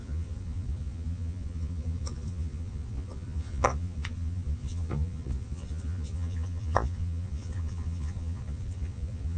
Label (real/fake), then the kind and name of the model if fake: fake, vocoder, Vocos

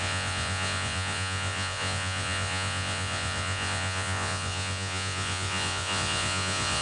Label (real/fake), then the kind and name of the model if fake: fake, vocoder, Vocos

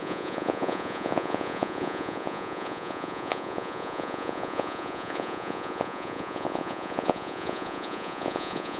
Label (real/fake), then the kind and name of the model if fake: fake, vocoder, Vocos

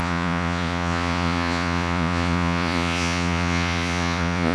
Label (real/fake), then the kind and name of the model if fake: fake, vocoder, Vocos